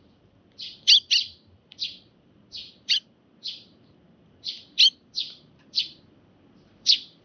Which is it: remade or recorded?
remade